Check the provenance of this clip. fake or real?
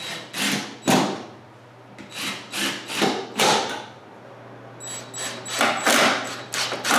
real